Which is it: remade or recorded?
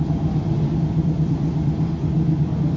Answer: recorded